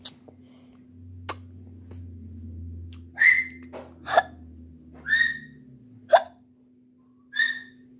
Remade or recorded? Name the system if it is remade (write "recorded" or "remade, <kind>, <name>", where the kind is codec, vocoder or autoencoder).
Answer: recorded